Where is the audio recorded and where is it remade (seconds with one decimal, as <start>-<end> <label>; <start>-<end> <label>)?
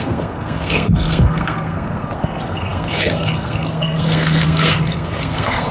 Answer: 0.0-5.7 remade